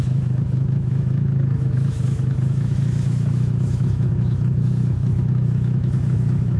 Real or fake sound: fake